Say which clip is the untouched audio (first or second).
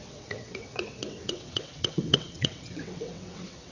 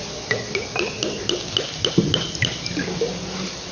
second